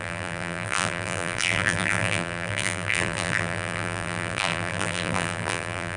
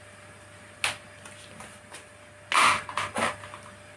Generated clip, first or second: first